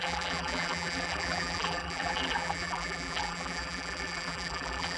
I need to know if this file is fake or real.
fake